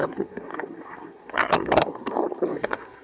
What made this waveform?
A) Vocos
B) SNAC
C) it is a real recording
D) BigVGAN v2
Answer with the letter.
B